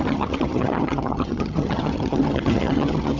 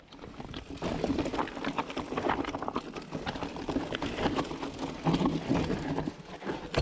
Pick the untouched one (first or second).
second